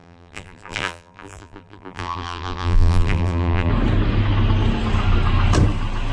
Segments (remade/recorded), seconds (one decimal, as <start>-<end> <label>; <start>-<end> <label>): 0.0-3.7 remade; 3.7-6.1 recorded